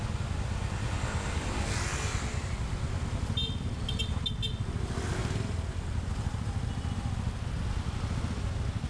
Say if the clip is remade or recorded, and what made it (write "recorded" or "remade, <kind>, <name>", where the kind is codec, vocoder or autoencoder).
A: recorded